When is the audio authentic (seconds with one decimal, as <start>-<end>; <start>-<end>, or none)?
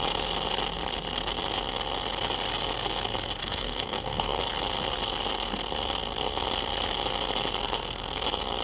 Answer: 0.0-3.4; 4.4-8.6